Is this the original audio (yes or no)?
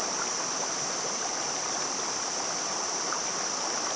no